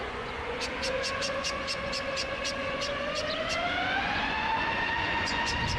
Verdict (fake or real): fake